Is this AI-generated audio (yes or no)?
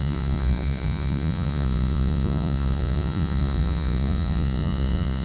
yes